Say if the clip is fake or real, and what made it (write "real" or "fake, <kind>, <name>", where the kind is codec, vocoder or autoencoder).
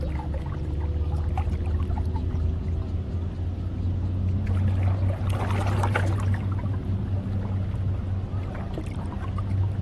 real